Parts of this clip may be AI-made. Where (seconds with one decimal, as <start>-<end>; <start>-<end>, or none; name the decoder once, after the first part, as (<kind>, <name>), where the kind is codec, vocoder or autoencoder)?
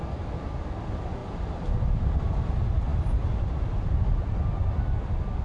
1.2-2.4 (vocoder, BigVGAN v2)